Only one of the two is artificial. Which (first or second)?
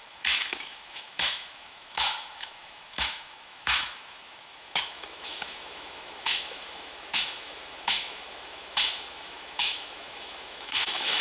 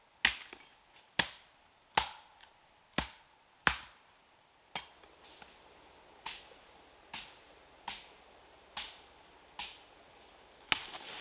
first